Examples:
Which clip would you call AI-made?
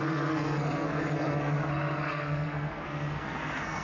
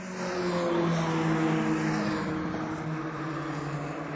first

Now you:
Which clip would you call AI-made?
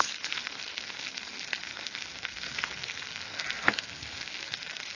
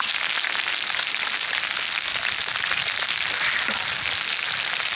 first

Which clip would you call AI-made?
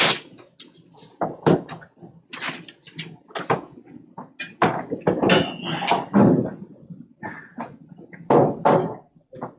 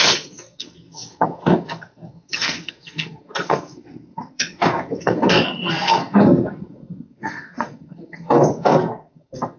second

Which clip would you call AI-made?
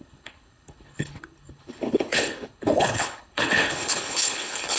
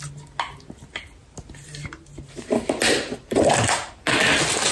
first